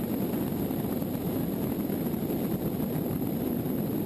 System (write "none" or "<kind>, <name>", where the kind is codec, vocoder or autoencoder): none